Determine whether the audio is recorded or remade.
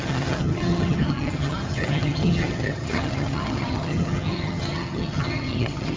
remade